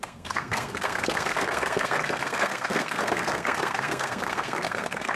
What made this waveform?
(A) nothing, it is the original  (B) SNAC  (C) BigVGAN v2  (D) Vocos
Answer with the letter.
B